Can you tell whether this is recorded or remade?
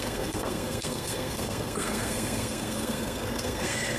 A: remade